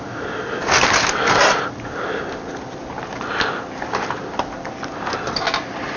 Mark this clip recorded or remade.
recorded